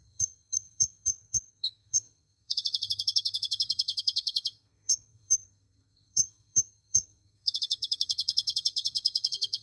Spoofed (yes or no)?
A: yes